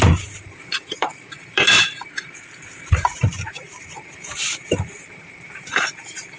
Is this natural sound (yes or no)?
no